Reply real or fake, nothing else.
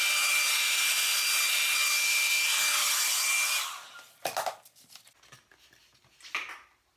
real